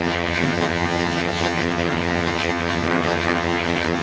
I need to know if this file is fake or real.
fake